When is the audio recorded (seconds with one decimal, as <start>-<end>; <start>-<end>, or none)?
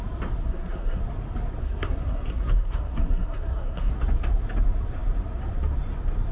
0.0-0.4; 1.0-1.6; 3.9-6.3